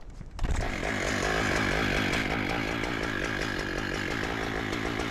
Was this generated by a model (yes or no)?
no